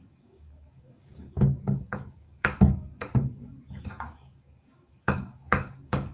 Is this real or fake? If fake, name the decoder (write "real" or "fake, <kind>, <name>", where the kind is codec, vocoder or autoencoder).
fake, codec, DAC